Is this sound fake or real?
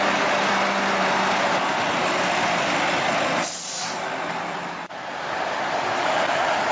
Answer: real